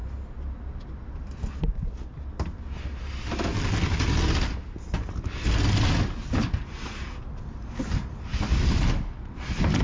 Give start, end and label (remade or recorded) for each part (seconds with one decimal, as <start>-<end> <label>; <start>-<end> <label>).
0.0-9.8 recorded

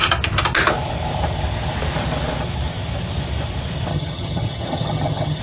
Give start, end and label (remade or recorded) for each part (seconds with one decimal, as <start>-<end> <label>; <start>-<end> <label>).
0.0-3.9 recorded; 3.9-5.4 remade